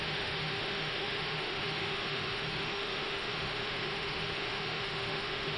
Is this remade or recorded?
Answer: remade